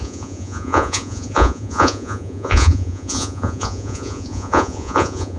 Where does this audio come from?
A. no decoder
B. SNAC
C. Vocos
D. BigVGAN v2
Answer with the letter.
C